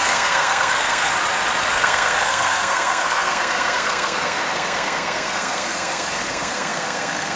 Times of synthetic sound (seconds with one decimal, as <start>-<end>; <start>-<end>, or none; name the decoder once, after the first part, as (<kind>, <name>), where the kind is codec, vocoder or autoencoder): 0.0-1.1 (codec, SNAC); 1.7-7.4

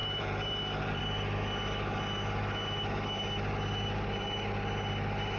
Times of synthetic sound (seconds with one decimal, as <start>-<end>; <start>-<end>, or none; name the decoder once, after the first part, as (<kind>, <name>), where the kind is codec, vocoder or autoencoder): 0.0-1.0 (vocoder, BigVGAN v2)

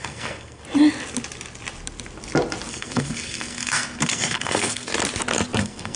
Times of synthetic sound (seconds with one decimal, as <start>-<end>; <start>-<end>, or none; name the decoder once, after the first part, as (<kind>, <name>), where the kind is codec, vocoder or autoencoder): 0.0-0.6 (codec, SNAC); 2.7-4.9; 5.6-6.0